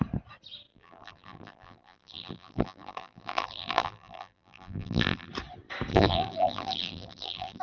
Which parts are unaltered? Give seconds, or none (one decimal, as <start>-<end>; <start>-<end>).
0.0-0.7; 5.3-5.9